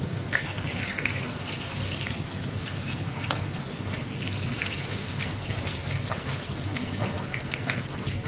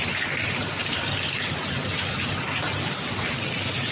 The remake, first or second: first